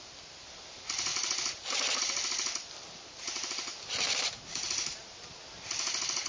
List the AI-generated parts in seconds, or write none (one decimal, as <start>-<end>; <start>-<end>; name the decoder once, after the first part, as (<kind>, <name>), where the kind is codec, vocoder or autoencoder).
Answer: none